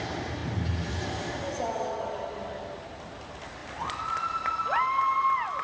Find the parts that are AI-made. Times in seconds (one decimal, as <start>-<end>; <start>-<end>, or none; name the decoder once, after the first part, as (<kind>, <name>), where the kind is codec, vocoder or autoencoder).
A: none